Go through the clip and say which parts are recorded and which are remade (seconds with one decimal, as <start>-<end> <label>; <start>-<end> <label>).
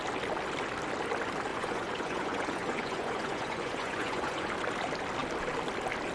0.0-1.5 recorded; 1.5-4.5 remade; 4.5-6.1 recorded